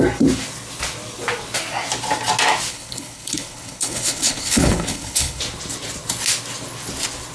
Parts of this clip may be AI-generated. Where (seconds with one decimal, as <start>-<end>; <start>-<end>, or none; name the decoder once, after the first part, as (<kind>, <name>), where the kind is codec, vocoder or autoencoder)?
2.7-5.4 (codec, HILCodec)